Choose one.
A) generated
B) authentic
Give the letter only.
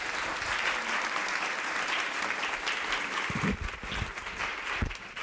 B